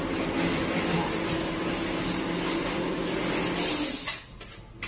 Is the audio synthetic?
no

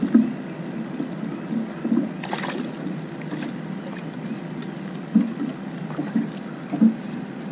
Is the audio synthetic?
no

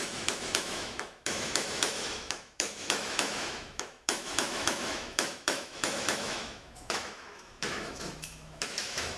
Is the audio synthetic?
yes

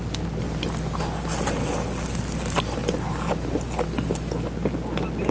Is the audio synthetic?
no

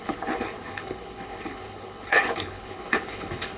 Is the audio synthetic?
yes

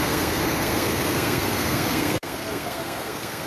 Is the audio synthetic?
yes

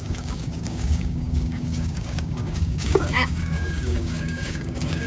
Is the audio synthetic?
yes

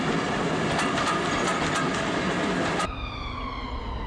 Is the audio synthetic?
no